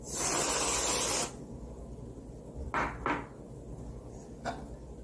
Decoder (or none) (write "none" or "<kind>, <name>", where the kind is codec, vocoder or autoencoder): none